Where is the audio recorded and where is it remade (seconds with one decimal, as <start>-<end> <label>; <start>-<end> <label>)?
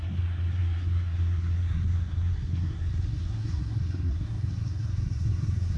0.0-5.8 remade